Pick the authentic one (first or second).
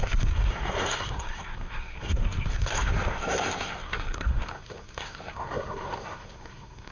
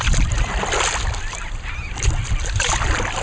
second